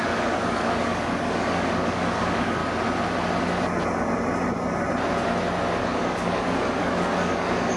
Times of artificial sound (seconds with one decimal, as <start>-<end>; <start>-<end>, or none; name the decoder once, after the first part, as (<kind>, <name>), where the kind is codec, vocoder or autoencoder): 0.0-2.6 (codec, DAC); 5.8-7.8